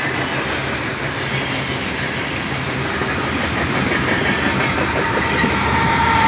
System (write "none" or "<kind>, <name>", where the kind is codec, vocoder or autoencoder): none